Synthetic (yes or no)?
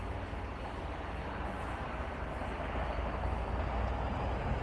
no